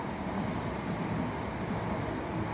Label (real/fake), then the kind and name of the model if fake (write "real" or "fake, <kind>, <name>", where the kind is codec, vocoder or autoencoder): real